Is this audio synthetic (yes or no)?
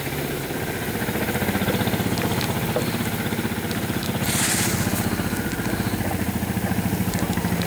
no